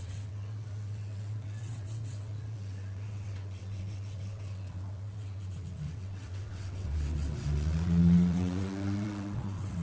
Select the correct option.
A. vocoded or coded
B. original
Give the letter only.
A